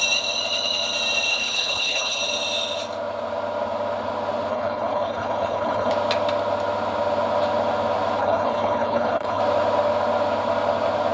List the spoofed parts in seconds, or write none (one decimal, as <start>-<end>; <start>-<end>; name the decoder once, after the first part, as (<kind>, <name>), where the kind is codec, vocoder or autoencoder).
1.3-2.2 (codec, HILCodec); 4.5-5.9; 8.2-9.4